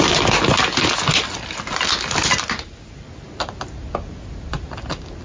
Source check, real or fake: real